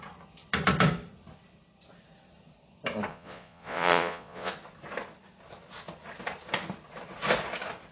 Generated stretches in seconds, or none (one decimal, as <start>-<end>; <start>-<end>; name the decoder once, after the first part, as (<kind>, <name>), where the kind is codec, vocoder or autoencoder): 3.1-4.5 (vocoder, Vocos)